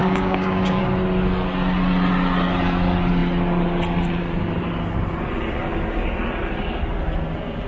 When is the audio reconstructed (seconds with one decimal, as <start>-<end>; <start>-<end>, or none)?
0.0-0.8

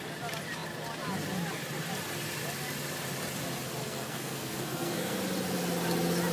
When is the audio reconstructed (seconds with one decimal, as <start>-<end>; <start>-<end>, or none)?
3.8-5.2

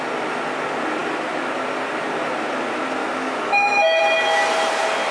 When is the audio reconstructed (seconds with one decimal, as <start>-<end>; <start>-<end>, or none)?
3.0-4.0